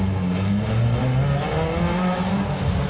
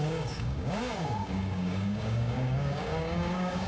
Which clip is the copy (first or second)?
second